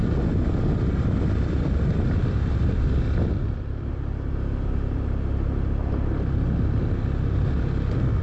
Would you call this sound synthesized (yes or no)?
no